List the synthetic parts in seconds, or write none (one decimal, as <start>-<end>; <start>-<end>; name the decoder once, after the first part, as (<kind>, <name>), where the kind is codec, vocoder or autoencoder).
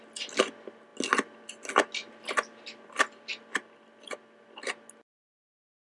none